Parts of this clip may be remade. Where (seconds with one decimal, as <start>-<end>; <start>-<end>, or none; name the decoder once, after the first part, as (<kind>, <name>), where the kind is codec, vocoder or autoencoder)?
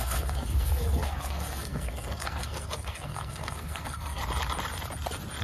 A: 0.0-4.2 (codec, SNAC)